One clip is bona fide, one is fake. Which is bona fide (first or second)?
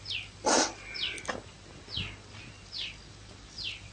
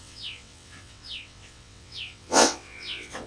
first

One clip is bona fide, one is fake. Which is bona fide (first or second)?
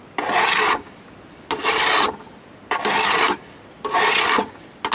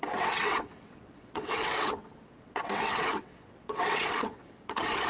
first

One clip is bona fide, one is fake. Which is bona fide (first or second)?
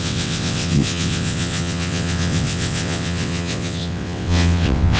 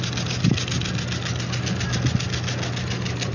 second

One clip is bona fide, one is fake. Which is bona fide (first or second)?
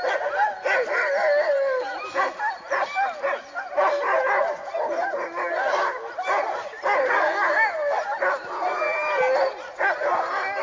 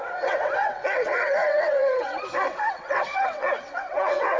first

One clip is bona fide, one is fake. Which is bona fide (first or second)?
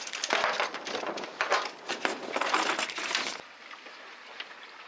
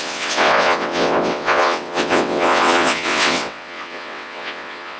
first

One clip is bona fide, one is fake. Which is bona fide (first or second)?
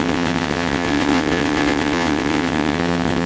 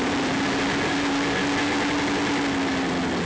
second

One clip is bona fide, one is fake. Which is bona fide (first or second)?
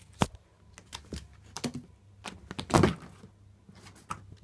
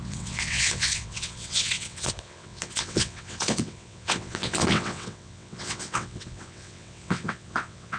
first